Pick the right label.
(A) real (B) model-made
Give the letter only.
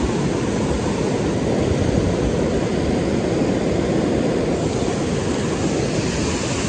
A